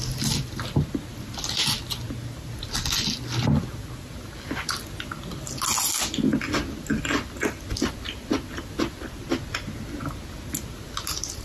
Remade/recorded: recorded